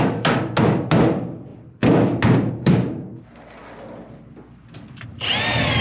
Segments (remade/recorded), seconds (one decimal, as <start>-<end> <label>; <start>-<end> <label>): 0.0-5.8 recorded